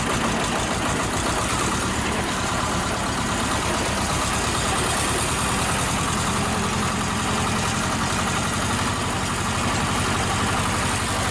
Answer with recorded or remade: recorded